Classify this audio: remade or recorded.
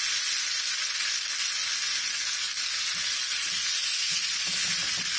recorded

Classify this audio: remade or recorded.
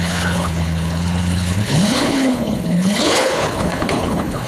remade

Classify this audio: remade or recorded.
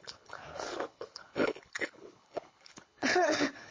remade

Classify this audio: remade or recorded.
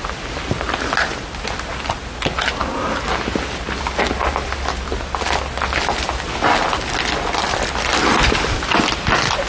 recorded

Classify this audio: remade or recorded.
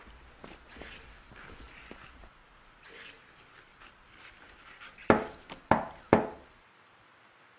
recorded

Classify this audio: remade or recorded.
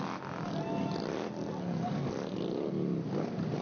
recorded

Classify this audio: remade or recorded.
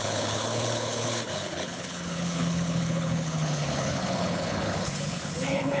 remade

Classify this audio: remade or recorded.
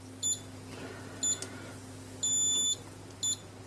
recorded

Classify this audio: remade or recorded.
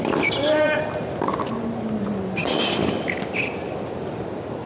recorded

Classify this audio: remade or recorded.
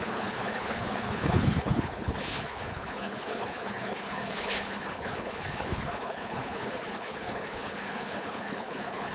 remade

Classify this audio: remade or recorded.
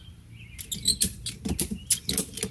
recorded